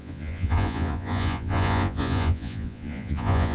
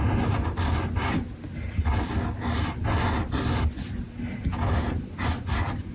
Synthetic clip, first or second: first